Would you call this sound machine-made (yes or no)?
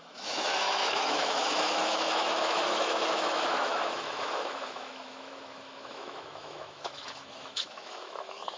yes